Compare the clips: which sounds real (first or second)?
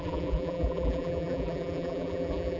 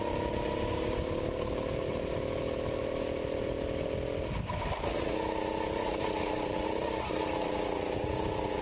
second